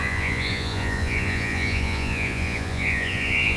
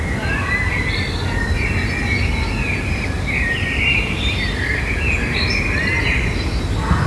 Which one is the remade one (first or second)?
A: first